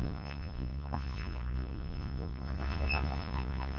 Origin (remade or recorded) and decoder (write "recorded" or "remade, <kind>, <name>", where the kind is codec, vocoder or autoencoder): remade, vocoder, Vocos